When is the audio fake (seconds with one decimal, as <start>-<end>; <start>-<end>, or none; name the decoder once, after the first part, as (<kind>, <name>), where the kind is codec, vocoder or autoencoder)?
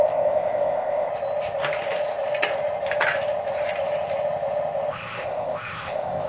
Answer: 0.0-1.1 (codec, ZipCodec); 4.9-6.3